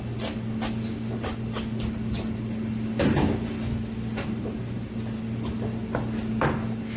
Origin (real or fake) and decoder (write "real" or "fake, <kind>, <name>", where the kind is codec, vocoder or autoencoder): real